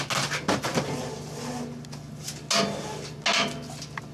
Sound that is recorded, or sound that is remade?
recorded